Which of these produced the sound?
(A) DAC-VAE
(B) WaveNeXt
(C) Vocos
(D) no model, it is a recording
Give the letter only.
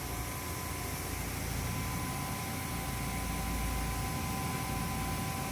D